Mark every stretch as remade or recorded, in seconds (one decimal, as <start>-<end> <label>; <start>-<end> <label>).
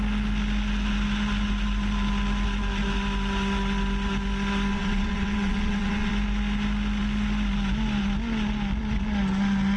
0.0-4.7 recorded; 4.7-6.1 remade; 6.1-9.8 recorded